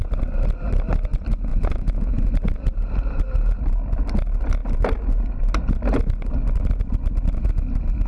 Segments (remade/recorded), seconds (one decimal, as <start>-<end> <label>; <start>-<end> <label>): 0.0-1.5 recorded; 1.5-2.3 remade; 2.3-8.1 recorded

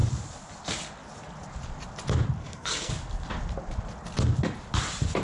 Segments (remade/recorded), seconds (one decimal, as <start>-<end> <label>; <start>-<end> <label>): 0.0-2.4 recorded; 2.4-2.9 remade; 2.9-5.2 recorded

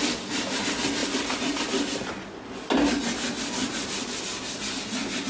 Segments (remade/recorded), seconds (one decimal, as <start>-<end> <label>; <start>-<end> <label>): 0.0-5.3 recorded

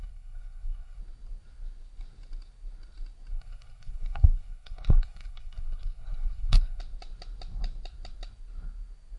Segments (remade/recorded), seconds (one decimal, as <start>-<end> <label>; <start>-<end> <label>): 0.0-1.0 remade; 1.0-3.3 recorded; 3.3-6.8 remade; 6.8-9.2 recorded